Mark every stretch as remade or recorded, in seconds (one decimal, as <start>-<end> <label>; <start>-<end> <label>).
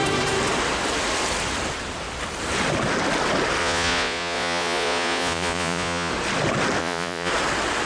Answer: 0.0-3.6 recorded; 3.6-6.1 remade; 6.1-6.8 recorded; 6.8-7.3 remade; 7.3-7.9 recorded